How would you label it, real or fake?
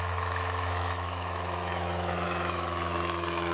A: fake